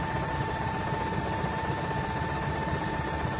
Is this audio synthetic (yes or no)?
no